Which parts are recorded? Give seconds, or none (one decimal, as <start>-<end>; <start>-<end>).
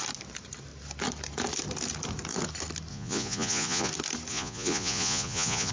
0.0-2.9; 3.9-4.3